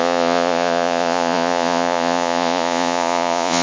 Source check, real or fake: fake